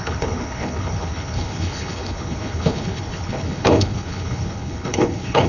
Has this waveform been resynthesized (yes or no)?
yes